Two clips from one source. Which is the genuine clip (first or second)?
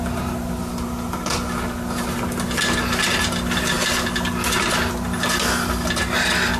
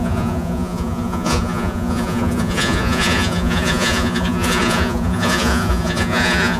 first